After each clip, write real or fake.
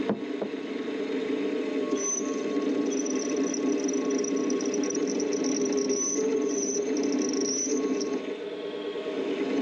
real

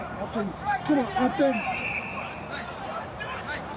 fake